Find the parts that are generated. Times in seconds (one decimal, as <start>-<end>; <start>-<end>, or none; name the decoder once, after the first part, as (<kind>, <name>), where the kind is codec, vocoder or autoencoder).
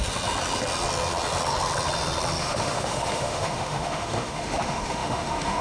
2.4-5.6 (autoencoder, DAC-VAE)